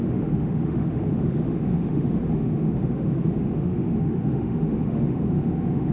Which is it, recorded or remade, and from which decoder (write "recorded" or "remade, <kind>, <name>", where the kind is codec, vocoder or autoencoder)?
remade, autoencoder, DAC-VAE